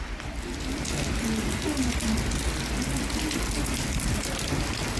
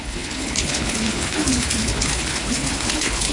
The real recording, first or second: first